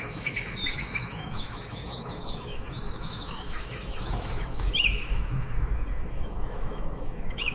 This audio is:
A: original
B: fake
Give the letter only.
B